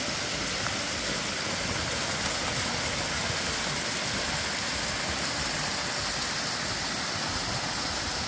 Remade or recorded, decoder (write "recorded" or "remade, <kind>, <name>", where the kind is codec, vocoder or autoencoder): recorded